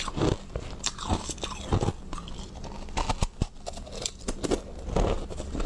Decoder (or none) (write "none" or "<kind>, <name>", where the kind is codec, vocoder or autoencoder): none